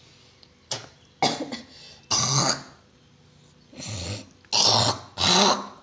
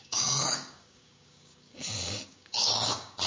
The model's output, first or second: second